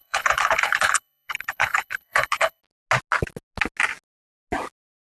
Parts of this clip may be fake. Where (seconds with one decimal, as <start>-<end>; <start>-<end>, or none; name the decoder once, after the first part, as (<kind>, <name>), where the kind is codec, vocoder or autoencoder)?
0.0-2.6 (codec, HILCodec)